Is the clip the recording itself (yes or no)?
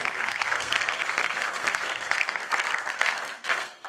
no